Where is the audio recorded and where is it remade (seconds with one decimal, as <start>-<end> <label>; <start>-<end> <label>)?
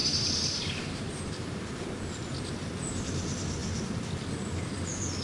0.0-1.4 remade; 1.4-5.2 recorded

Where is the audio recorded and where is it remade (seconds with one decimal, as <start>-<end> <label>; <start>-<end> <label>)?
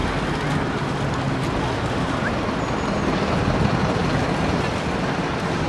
0.0-5.7 recorded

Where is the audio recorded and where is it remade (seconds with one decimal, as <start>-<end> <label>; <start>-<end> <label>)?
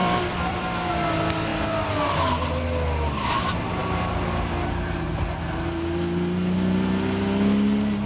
0.0-0.9 remade; 0.9-8.1 recorded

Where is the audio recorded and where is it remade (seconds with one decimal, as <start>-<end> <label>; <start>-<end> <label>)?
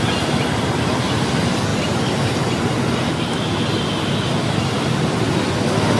0.0-6.0 recorded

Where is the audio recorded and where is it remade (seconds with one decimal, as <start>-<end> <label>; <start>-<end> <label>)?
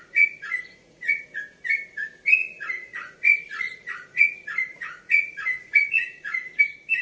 0.0-1.2 remade; 1.2-2.4 recorded; 2.4-6.6 remade; 6.6-7.0 recorded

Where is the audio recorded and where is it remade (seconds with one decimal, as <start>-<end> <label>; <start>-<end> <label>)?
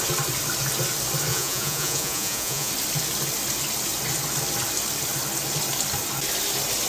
0.0-1.3 recorded; 1.3-2.7 remade; 2.7-6.9 recorded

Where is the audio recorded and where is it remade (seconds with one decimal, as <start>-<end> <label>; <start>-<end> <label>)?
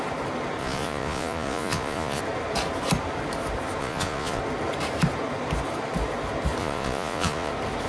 0.0-0.6 recorded; 0.6-2.2 remade; 2.2-3.8 recorded; 3.8-4.4 remade; 4.4-6.6 recorded; 6.6-7.5 remade; 7.5-7.9 recorded